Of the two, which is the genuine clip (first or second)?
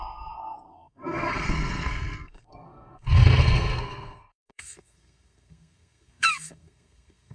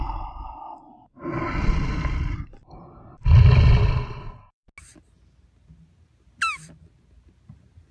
second